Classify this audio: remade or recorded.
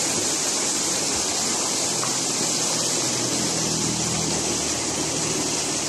recorded